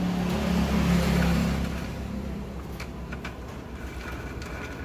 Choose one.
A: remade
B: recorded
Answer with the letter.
B